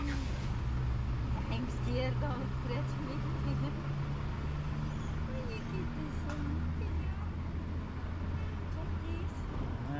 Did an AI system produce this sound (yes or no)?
no